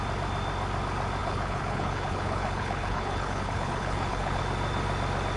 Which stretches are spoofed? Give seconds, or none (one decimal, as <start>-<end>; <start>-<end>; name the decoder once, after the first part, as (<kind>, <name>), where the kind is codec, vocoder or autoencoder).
1.2-4.4 (codec, HILCodec)

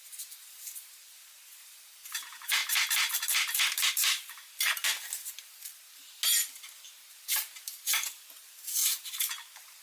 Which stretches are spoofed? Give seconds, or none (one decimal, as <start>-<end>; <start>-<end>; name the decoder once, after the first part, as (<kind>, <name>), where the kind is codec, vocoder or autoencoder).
0.0-2.6 (vocoder, BigVGAN v2); 3.9-4.9; 7.1-9.8

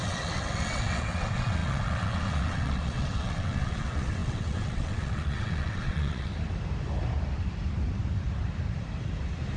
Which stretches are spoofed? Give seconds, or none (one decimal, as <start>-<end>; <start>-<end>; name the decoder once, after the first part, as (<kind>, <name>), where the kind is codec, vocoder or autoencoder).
0.0-6.3 (vocoder, WaveNeXt)

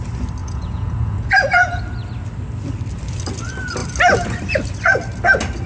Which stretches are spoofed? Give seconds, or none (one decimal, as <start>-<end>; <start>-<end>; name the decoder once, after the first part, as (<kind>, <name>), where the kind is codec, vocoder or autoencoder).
0.4-1.8 (vocoder, Vocos)